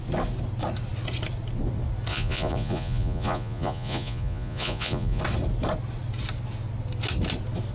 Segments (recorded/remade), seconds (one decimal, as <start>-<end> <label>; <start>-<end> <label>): 0.0-2.1 recorded; 2.1-5.2 remade; 5.2-7.7 recorded